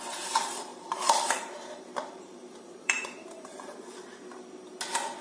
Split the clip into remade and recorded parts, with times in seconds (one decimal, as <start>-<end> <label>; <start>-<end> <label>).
0.0-0.7 recorded; 0.7-3.8 remade; 3.8-5.2 recorded